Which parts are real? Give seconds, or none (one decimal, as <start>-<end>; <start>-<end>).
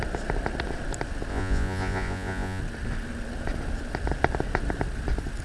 0.0-1.3; 2.6-5.4